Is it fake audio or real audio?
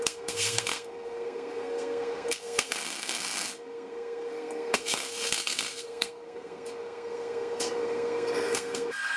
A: fake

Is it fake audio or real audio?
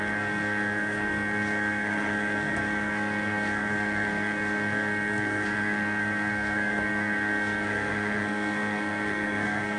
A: fake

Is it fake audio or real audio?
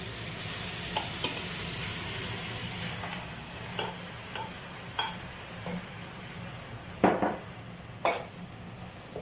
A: real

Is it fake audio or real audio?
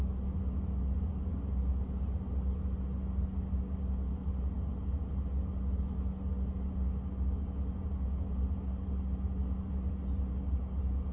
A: real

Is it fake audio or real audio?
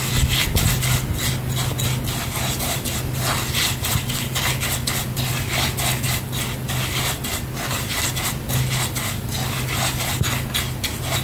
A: real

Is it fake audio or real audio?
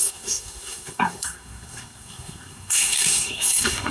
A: fake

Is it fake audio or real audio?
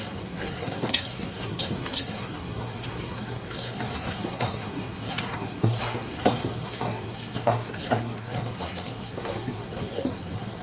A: fake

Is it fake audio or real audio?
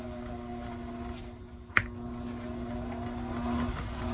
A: real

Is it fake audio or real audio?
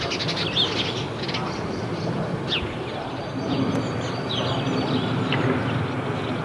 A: real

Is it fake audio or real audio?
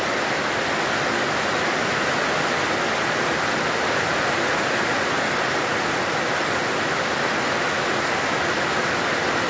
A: real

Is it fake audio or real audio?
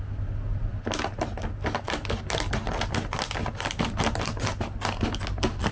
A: real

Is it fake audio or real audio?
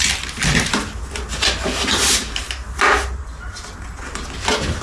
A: real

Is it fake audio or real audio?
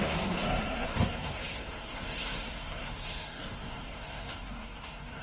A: fake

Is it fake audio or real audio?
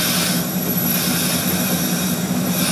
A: real